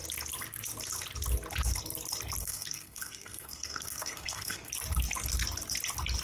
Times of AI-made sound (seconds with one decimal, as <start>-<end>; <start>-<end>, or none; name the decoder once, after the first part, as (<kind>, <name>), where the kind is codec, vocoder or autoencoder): 2.4-4.7 (codec, SNAC)